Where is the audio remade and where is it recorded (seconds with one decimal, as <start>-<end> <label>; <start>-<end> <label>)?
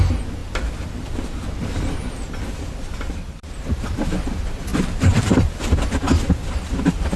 0.0-4.7 recorded; 4.7-5.5 remade; 5.5-7.2 recorded